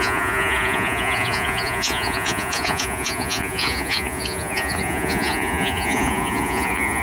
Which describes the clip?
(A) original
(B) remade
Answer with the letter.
B